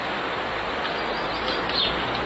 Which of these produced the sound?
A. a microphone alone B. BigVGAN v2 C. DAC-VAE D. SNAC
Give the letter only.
A